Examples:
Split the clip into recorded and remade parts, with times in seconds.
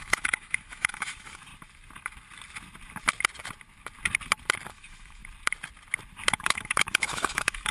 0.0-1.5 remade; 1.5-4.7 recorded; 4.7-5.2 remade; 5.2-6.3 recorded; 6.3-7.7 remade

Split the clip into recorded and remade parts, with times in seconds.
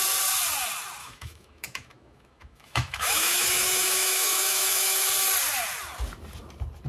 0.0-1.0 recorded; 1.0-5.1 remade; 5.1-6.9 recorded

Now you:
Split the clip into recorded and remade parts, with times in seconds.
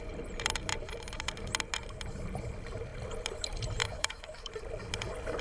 0.0-3.8 recorded; 3.8-4.5 remade; 4.5-5.4 recorded